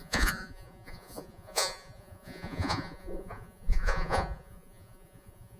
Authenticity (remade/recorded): remade